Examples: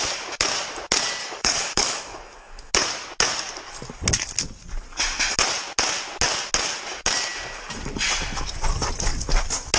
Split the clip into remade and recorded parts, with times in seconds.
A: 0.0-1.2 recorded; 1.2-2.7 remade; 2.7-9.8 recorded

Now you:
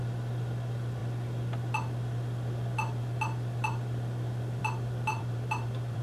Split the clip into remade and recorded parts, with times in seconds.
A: 0.0-5.1 recorded; 5.1-6.0 remade

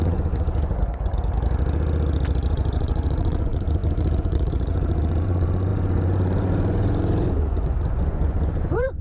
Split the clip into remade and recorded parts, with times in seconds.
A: 0.0-1.1 remade; 1.1-2.5 recorded; 2.5-9.0 remade

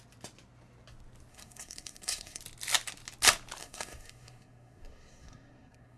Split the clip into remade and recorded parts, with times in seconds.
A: 0.0-1.3 recorded; 1.3-2.4 remade; 2.4-3.6 recorded; 3.6-6.0 remade

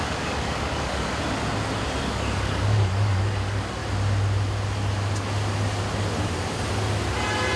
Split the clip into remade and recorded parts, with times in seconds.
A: 0.0-1.1 remade; 1.1-2.0 recorded; 2.0-3.8 remade; 3.8-7.6 recorded

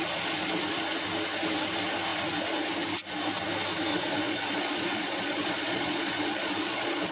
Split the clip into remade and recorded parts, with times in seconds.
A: 0.0-3.9 recorded; 3.9-7.1 remade

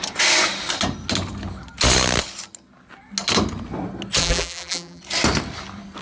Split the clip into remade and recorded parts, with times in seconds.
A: 0.0-4.2 recorded; 4.2-5.0 remade; 5.0-6.0 recorded